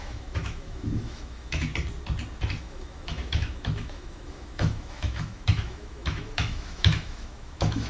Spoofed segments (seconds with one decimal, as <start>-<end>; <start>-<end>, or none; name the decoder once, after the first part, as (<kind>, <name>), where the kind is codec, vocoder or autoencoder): 0.0-1.7 (autoencoder, DAC-VAE); 2.6-7.9